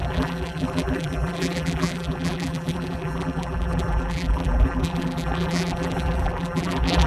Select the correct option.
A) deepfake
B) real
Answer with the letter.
A